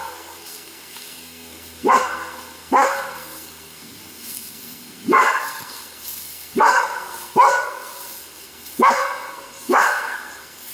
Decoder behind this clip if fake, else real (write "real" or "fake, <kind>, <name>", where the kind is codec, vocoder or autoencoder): fake, codec, SNAC